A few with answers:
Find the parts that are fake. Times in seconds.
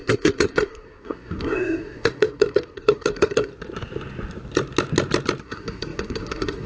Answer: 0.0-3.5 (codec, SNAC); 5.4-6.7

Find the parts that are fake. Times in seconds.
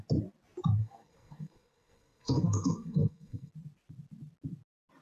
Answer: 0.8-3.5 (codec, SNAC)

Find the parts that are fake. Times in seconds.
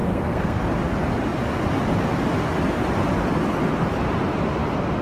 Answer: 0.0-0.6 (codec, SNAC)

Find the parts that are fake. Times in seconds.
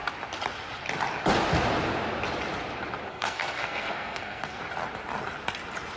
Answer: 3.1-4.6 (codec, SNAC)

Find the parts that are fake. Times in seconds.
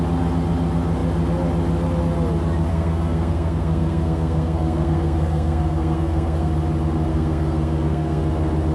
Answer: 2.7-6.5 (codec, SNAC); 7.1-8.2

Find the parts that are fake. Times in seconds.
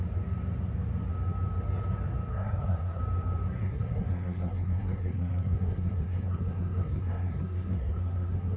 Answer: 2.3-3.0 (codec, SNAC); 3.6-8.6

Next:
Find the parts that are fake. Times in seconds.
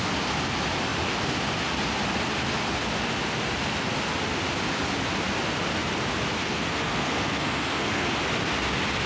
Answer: 6.4-8.1 (codec, SNAC)